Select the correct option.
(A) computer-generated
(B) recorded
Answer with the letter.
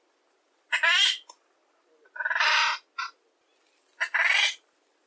B